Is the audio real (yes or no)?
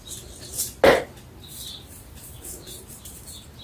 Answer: yes